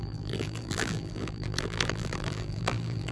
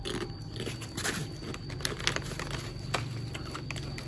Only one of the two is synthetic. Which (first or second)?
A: first